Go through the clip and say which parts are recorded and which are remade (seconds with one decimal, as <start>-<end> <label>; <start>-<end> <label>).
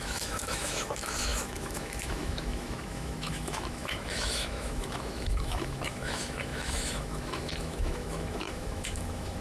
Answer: 0.0-9.4 remade